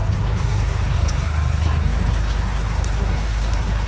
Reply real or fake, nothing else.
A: fake